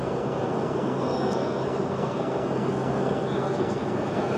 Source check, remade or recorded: remade